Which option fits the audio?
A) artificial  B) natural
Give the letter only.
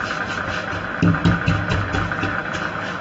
A